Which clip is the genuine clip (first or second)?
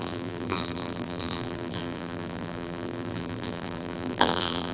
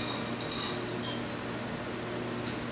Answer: second